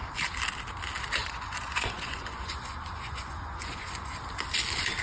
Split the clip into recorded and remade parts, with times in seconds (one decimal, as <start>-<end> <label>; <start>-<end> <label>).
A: 0.0-1.2 recorded; 1.2-4.2 remade; 4.2-5.0 recorded